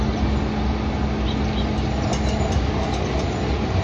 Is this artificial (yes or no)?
no